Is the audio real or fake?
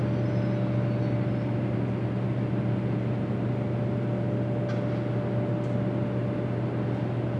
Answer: real